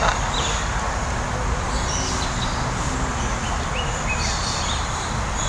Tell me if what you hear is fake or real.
real